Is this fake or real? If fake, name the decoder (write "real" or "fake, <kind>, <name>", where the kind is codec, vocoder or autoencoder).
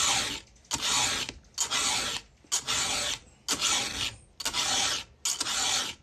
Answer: real